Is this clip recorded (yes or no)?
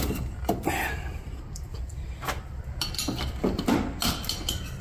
yes